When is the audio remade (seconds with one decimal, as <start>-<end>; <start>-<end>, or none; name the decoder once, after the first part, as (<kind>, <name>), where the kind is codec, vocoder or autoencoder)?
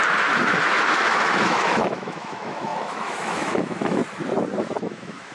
0.6-4.0 (autoencoder, DAC-VAE); 4.6-5.3